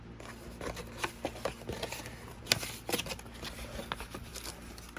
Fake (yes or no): no